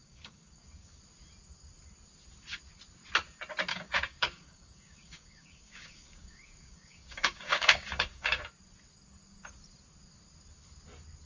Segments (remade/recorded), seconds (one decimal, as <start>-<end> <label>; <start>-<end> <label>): 0.0-1.0 remade; 1.0-3.7 recorded; 3.7-8.4 remade; 8.4-11.3 recorded